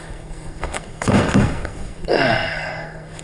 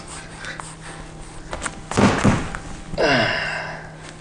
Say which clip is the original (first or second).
second